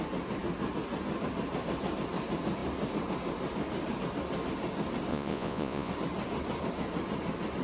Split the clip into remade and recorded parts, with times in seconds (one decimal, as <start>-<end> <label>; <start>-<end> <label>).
0.0-5.1 recorded; 5.1-5.9 remade; 5.9-7.6 recorded